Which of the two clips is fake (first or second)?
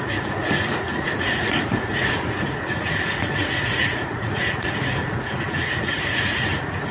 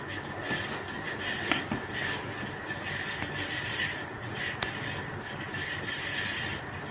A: first